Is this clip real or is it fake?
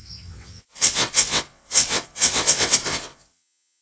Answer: fake